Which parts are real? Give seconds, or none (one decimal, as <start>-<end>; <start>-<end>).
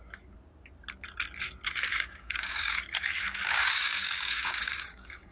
0.0-1.9